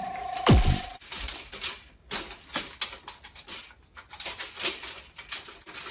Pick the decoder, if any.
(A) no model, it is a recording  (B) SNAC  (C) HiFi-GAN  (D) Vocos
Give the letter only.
A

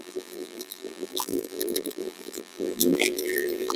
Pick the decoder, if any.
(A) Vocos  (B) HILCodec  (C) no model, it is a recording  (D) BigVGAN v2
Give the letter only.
D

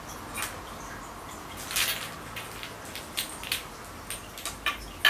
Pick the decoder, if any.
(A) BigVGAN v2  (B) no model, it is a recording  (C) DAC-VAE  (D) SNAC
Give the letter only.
B